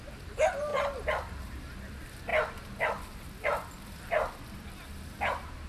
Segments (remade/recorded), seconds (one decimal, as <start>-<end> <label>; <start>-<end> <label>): 0.0-0.7 recorded; 0.7-1.6 remade; 1.6-5.7 recorded